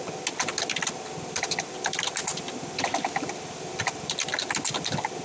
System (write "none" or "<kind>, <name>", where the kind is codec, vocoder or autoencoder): none